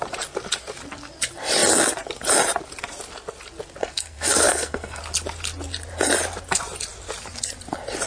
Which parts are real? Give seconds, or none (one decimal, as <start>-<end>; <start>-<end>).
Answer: 0.0-3.8; 5.0-8.1